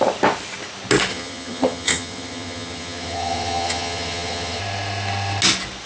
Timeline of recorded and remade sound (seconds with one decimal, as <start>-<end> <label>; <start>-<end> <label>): 0.0-1.1 recorded; 1.1-4.6 remade; 4.6-5.9 recorded